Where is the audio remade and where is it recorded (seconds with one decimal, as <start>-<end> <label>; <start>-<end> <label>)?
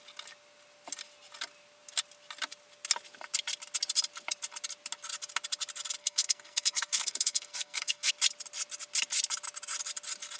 0.0-6.0 recorded; 6.0-8.1 remade; 8.1-10.4 recorded